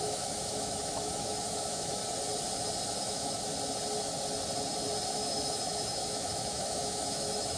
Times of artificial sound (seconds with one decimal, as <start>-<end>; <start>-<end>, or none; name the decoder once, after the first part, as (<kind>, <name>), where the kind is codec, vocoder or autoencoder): 0.0-2.0 (autoencoder, DAC-VAE); 3.0-3.5; 5.1-7.6